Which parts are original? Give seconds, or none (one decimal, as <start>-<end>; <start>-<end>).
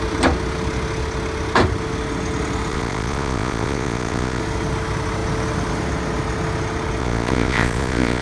0.0-2.7; 4.4-7.0